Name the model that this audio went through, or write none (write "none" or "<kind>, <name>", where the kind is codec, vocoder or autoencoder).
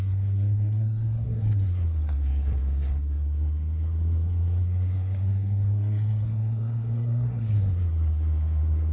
codec, SNAC